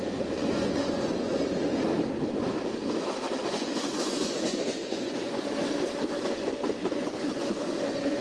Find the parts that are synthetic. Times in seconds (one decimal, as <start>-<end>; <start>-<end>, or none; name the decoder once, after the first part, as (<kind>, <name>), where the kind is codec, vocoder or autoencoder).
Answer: 0.0-1.3 (vocoder, Vocos); 3.4-5.6; 6.2-8.2